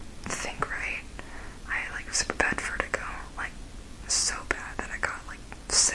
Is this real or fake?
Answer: real